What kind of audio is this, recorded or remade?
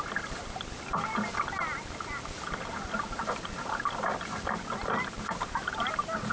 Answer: recorded